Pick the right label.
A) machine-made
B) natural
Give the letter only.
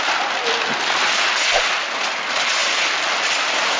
B